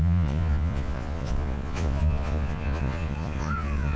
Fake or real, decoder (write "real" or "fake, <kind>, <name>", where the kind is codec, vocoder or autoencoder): fake, vocoder, Vocos